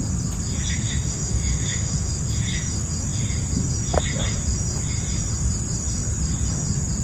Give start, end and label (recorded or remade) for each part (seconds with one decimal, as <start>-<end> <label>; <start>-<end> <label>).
0.0-0.8 recorded; 0.8-2.1 remade; 2.1-7.0 recorded